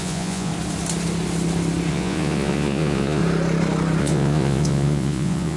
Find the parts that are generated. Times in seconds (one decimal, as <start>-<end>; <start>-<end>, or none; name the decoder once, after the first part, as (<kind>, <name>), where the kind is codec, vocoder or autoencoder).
0.0-0.5 (vocoder, Vocos); 1.9-3.2; 4.0-5.6